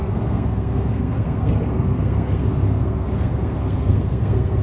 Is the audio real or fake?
fake